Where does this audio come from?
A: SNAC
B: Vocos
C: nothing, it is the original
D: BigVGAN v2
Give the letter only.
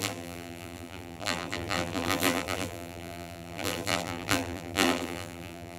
D